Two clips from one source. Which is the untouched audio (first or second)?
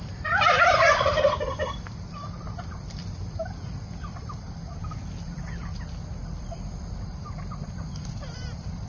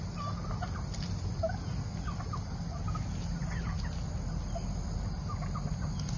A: second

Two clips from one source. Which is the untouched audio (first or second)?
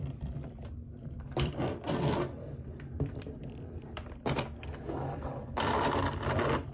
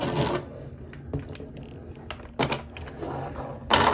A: second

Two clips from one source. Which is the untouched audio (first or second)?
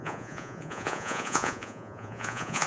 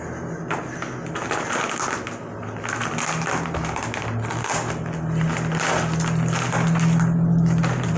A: second